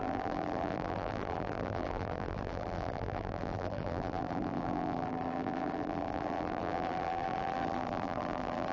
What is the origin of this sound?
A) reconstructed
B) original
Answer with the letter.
A